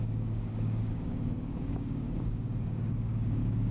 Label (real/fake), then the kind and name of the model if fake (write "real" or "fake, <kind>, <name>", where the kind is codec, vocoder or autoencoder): fake, codec, DAC